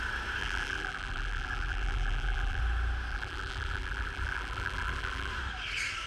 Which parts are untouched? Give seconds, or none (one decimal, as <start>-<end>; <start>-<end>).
0.0-0.4; 2.6-3.1; 5.3-6.1